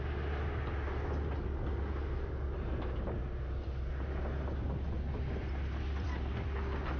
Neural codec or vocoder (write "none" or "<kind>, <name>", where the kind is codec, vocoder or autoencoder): none